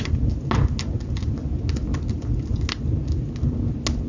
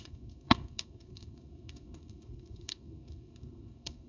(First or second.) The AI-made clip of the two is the second